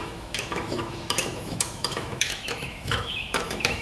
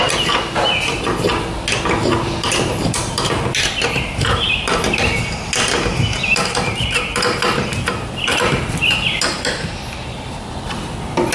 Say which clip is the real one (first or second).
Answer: second